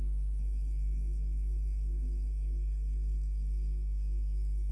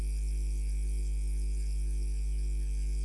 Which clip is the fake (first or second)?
first